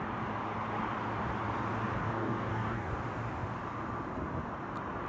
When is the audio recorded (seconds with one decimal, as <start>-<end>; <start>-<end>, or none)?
0.0-2.0; 2.9-5.1